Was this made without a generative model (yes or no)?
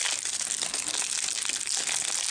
yes